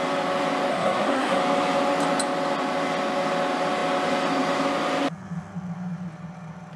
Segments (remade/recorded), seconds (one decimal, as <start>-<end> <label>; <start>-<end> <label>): 0.0-0.7 recorded; 0.7-1.4 remade; 1.4-6.8 recorded